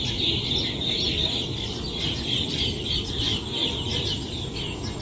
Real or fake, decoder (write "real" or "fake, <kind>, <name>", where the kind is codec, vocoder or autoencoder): real